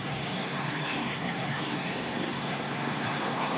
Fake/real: fake